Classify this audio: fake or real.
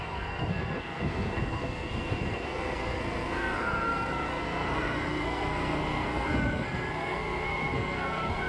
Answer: fake